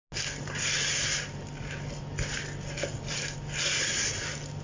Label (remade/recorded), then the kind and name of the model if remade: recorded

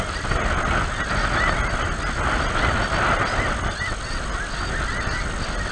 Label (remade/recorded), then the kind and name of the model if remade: recorded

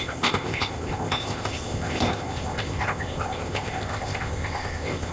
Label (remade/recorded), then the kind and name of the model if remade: remade, codec, ZipCodec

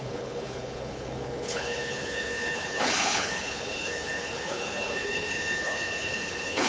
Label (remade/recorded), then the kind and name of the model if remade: remade, codec, HILCodec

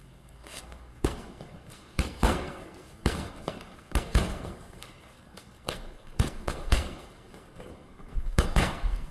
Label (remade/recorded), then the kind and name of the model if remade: remade, codec, SNAC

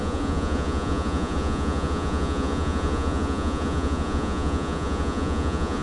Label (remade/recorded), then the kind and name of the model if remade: remade, vocoder, Vocos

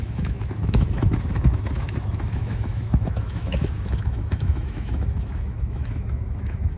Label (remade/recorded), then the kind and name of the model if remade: remade, autoencoder, DAC-VAE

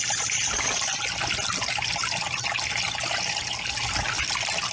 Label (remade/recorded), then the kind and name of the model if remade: recorded